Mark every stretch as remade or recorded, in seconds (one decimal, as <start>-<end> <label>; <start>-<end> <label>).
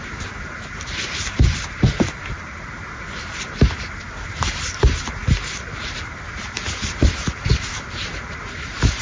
0.0-9.0 remade